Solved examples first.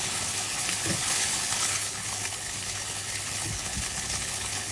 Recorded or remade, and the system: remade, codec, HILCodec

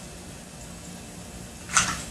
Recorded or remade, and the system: recorded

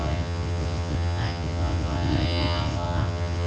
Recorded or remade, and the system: remade, vocoder, WaveNeXt